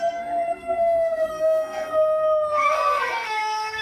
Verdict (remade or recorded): remade